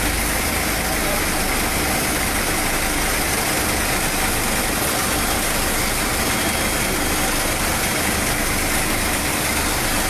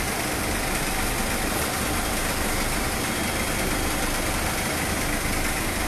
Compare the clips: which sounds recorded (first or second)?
first